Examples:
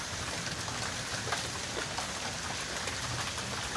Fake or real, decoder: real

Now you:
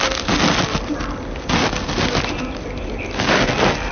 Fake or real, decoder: real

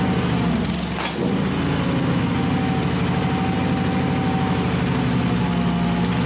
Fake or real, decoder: real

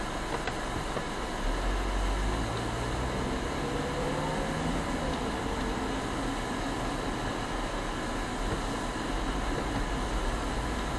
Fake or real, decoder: real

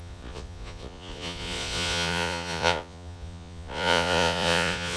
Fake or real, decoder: fake, vocoder, Vocos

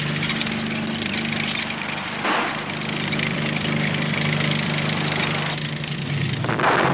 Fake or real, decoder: real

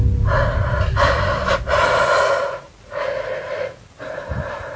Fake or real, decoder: real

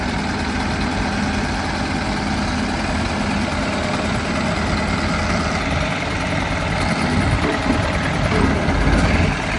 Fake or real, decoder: real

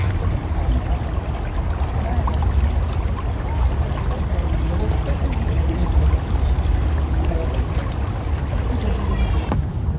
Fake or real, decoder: real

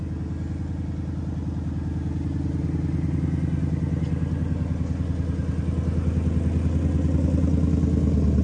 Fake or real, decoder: real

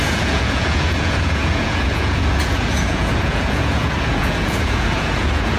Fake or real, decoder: fake, vocoder, Vocos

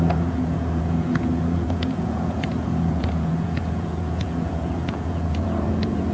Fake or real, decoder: fake, vocoder, Vocos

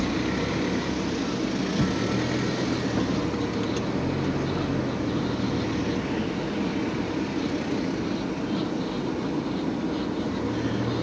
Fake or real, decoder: real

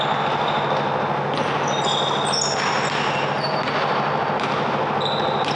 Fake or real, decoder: real